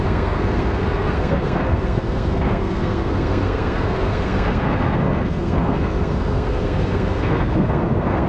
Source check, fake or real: fake